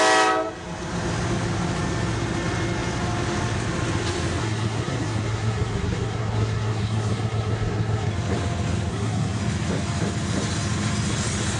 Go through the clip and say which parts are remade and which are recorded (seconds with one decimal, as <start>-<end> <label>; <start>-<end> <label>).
0.0-4.4 recorded; 4.4-8.1 remade; 8.1-8.9 recorded; 8.9-9.4 remade; 9.4-11.6 recorded